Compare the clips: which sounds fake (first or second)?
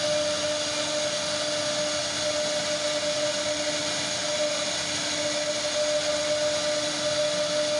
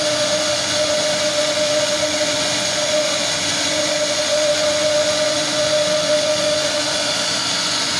second